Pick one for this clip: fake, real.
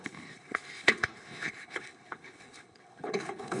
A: fake